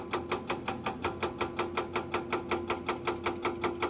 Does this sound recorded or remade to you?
recorded